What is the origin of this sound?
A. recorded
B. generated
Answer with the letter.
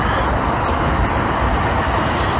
A